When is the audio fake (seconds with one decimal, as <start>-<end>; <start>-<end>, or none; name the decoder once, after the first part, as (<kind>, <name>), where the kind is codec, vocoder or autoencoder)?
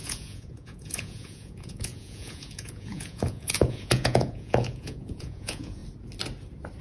0.0-5.8 (vocoder, Vocos)